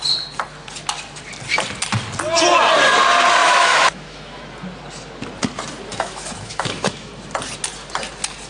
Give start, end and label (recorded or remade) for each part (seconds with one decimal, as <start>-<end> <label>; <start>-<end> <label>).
0.0-3.4 recorded; 3.4-4.4 remade; 4.4-5.9 recorded; 5.9-7.1 remade; 7.1-8.5 recorded